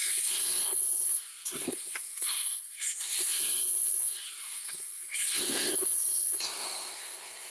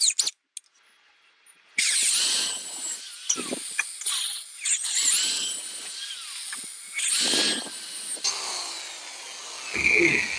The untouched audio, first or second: second